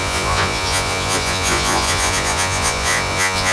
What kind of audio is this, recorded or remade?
remade